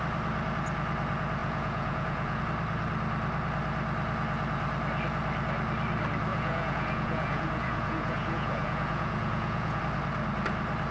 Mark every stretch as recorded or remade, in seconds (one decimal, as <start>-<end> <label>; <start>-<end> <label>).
0.0-1.4 recorded; 1.4-2.4 remade; 2.4-6.3 recorded; 6.3-9.8 remade; 9.8-10.9 recorded